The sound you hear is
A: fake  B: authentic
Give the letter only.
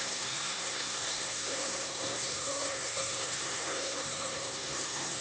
A